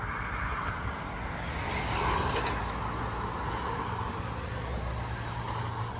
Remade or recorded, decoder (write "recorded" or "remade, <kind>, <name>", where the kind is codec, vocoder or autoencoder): recorded